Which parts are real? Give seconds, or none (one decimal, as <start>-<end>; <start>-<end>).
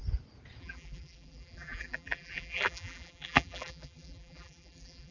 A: 0.0-0.6